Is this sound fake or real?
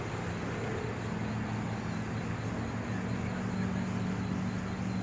real